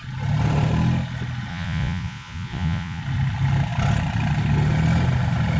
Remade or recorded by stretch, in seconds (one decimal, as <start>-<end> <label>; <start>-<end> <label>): 0.0-1.5 recorded; 1.5-3.0 remade; 3.0-5.6 recorded